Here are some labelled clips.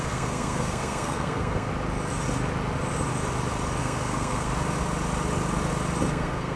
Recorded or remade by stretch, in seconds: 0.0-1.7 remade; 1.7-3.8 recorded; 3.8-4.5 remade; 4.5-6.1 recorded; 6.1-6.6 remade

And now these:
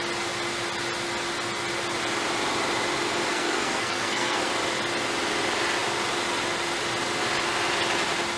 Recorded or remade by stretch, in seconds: 0.0-3.3 recorded; 3.3-4.5 remade; 4.5-8.4 recorded

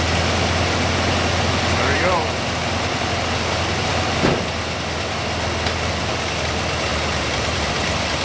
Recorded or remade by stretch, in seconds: 0.0-6.9 recorded; 6.9-7.7 remade; 7.7-8.2 recorded